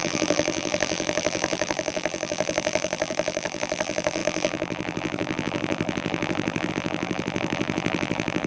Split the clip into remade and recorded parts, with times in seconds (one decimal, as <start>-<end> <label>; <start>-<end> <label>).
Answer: 0.0-8.5 remade